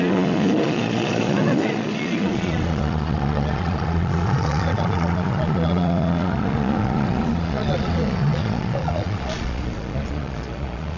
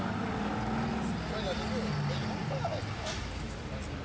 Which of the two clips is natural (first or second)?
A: second